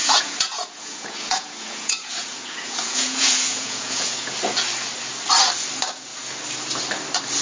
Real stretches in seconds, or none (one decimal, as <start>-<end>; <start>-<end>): 4.4-7.4